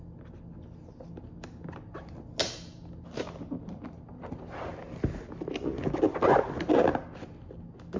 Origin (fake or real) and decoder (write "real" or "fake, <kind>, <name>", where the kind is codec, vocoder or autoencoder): real